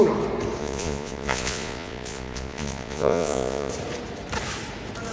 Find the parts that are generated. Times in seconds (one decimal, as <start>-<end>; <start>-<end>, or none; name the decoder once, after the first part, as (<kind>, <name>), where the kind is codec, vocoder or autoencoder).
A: 0.6-3.7 (vocoder, Vocos)